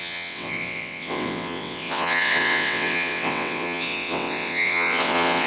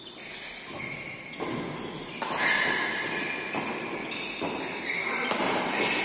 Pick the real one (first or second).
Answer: second